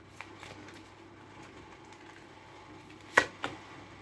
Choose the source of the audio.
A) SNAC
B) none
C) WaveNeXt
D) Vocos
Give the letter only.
B